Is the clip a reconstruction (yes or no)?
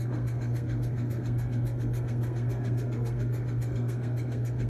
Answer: yes